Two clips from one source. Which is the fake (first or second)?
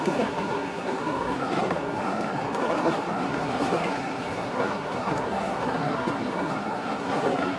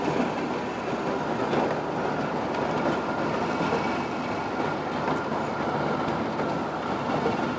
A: first